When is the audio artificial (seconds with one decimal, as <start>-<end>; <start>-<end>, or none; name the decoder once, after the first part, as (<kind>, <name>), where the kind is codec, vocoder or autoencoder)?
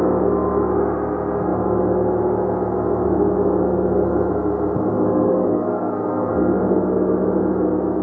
5.3-6.3 (codec, SNAC)